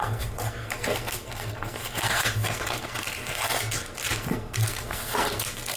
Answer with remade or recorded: remade